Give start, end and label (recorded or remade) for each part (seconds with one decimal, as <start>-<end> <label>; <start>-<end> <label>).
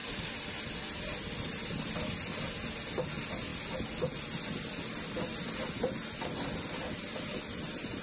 0.0-0.7 remade; 0.7-8.0 recorded